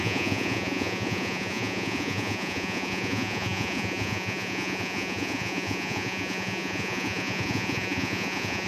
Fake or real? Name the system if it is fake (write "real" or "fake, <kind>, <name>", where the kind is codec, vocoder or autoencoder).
fake, vocoder, Vocos